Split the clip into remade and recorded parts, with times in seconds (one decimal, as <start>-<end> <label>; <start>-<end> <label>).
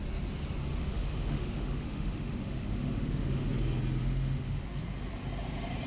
0.0-0.8 recorded; 0.8-3.5 remade; 3.5-4.0 recorded; 4.0-4.6 remade; 4.6-5.9 recorded